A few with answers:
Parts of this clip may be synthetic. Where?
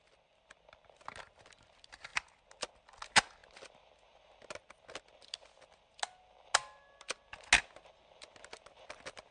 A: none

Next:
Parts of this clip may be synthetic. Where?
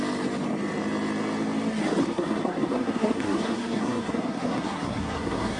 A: 2.0-5.6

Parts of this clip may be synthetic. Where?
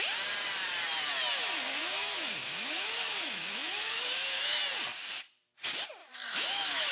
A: 1.8-4.6; 6.0-6.9